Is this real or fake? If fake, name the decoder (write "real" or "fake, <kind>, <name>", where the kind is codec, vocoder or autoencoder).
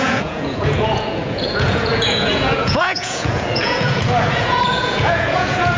fake, vocoder, Vocos